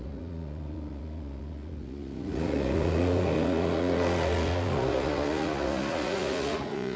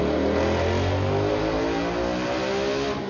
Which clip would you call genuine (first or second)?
second